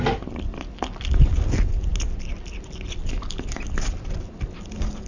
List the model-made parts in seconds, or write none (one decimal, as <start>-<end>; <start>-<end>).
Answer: none